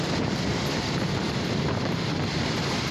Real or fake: fake